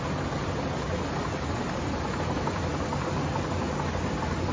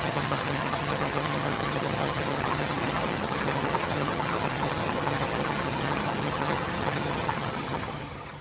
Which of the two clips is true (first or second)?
first